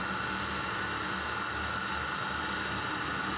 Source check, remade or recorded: recorded